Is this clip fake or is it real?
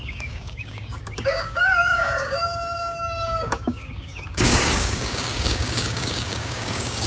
fake